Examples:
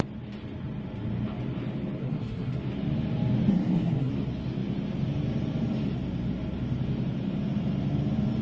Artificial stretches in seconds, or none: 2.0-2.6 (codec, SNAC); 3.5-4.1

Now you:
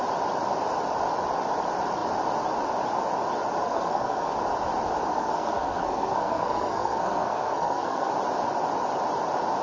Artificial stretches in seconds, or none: 3.6-4.3 (codec, SNAC); 5.1-8.1

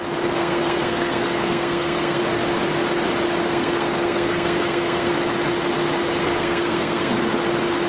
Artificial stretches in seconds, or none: 0.4-2.2 (codec, SNAC); 3.4-5.1; 6.2-7.1

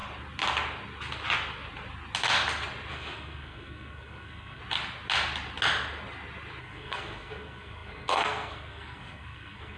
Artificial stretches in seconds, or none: 2.9-4.6 (codec, SNAC); 6.6-9.8

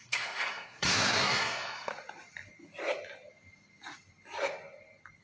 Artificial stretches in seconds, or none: 0.0-1.9 (codec, SNAC)

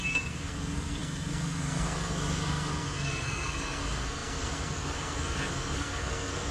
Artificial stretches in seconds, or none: 0.0-6.5 (codec, SNAC)

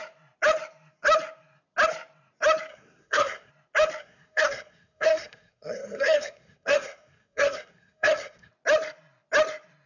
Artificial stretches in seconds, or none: 2.7-3.5 (codec, SNAC); 4.0-8.5